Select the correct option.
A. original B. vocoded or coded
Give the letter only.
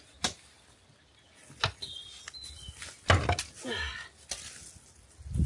A